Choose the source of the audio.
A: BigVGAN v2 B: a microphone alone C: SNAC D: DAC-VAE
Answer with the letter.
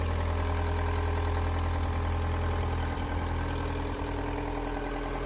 B